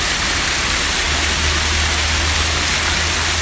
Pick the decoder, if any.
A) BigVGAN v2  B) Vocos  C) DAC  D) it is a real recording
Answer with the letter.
D